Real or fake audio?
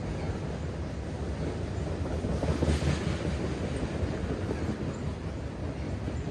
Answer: real